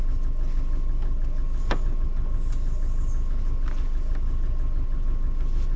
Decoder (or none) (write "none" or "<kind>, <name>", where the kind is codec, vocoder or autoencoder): none